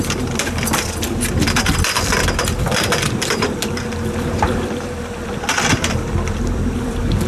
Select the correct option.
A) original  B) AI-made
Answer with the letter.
B